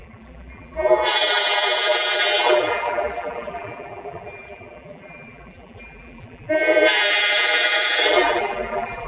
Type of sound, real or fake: fake